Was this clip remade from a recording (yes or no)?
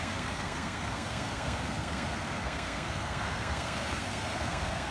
yes